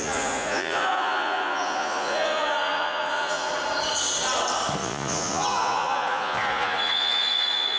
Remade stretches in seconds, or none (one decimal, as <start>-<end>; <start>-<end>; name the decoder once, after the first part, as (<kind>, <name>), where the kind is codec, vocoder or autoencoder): 0.0-3.5 (vocoder, Vocos); 4.8-7.8